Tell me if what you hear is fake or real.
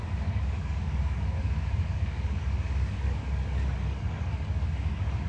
fake